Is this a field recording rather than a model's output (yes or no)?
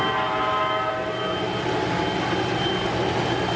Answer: yes